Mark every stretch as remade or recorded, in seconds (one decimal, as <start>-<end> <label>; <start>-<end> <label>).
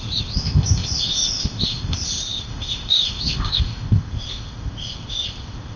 0.0-5.8 remade